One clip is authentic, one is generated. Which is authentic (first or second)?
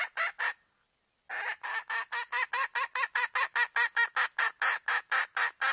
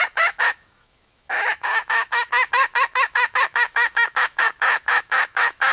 first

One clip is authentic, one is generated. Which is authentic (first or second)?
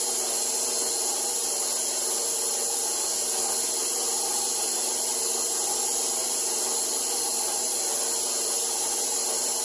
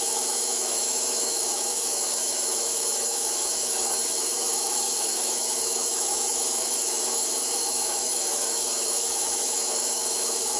first